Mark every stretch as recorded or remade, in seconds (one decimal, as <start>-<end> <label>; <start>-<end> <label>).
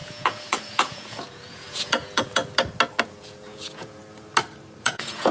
0.0-2.4 remade; 2.4-3.0 recorded; 3.0-4.0 remade; 4.0-4.8 recorded; 4.8-5.3 remade